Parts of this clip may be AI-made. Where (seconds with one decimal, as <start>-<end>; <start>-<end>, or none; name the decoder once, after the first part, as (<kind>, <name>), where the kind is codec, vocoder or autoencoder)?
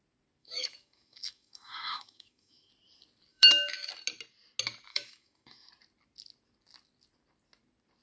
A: 0.4-2.7 (autoencoder, DAC-VAE); 3.3-3.9; 4.9-5.7